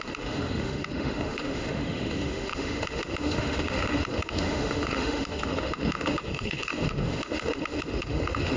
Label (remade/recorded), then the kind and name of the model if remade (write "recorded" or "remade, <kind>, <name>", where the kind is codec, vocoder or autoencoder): remade, autoencoder, DAC-VAE